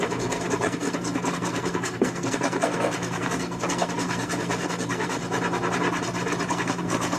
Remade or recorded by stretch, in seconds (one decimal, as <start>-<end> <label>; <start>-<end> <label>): 0.0-5.2 remade; 5.2-6.5 recorded; 6.5-7.2 remade